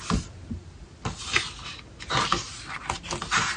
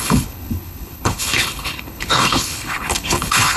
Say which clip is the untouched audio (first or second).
first